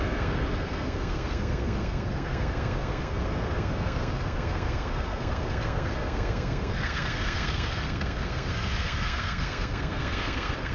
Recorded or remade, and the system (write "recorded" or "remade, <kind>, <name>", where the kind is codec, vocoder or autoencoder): remade, codec, SNAC